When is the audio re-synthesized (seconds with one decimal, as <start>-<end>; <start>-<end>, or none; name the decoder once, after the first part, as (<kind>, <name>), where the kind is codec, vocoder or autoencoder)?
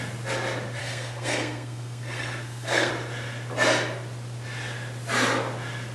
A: 0.8-2.9 (codec, SNAC)